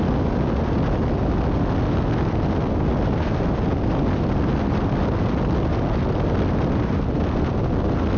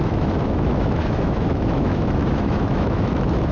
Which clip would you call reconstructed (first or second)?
second